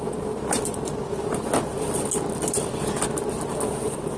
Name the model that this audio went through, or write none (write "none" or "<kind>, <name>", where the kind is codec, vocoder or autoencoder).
none